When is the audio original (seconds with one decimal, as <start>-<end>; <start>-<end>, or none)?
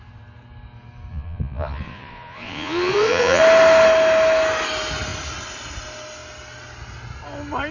0.0-1.1; 3.4-7.7